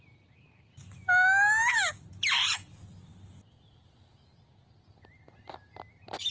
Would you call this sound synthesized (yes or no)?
no